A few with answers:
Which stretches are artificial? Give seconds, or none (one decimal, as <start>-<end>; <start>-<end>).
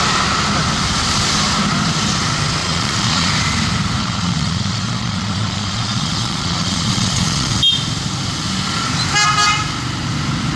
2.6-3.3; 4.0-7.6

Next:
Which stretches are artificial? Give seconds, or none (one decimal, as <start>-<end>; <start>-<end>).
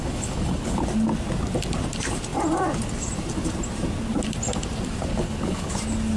0.0-0.8; 5.1-5.7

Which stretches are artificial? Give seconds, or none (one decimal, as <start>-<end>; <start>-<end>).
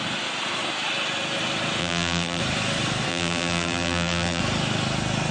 1.8-2.4; 3.1-4.4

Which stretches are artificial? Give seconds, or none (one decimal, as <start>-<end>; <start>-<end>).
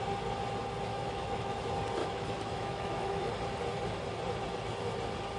0.9-1.6; 2.0-3.3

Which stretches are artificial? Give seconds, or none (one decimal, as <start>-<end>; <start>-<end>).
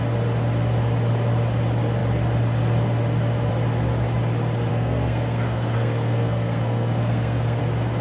4.7-7.6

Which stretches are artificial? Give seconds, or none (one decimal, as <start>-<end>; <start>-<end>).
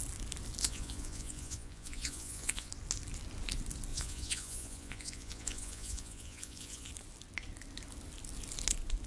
0.6-2.7; 3.9-6.9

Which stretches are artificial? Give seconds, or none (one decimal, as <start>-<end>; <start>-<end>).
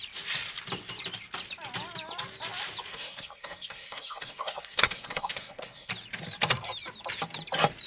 2.9-5.9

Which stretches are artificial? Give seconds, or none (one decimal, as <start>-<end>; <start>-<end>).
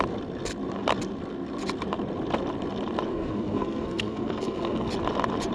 3.1-4.9